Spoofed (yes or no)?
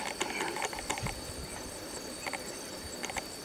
no